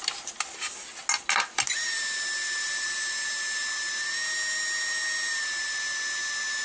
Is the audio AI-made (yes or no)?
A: no